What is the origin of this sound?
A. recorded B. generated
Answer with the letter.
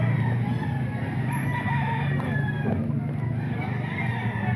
A